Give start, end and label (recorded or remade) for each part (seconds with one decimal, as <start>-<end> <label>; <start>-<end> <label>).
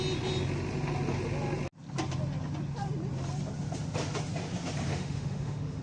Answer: 0.0-4.9 recorded; 4.9-5.8 remade